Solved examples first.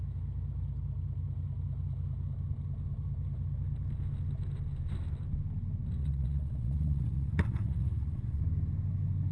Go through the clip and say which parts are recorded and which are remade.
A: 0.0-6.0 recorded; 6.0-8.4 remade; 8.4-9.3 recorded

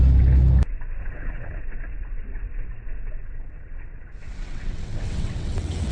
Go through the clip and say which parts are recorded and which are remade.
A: 0.0-1.0 recorded; 1.0-1.6 remade; 1.6-3.2 recorded; 3.2-5.9 remade